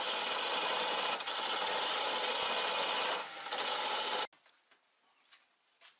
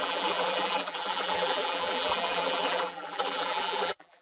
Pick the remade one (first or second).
second